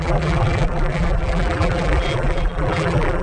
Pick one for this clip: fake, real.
fake